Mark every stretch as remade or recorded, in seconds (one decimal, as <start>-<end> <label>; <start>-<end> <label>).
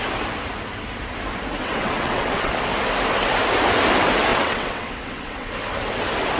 0.0-1.6 recorded; 1.6-2.5 remade; 2.5-4.3 recorded; 4.3-5.5 remade; 5.5-6.4 recorded